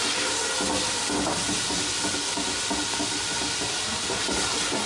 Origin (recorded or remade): recorded